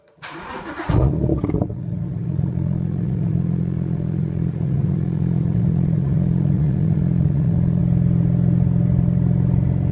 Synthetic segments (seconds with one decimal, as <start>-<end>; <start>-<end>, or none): 0.0-7.8